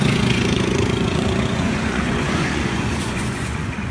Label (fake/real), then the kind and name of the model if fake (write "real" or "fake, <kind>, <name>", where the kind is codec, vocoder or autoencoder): fake, vocoder, Vocos